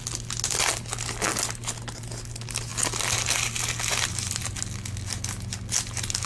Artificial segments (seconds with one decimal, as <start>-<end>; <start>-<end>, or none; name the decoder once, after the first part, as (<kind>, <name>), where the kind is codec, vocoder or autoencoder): none